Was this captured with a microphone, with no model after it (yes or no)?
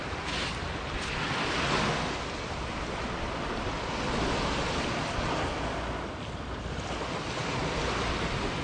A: yes